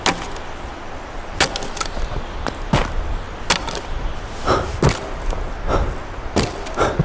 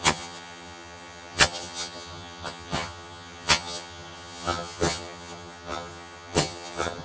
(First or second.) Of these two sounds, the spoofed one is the second